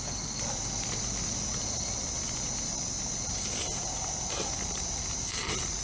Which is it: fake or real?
real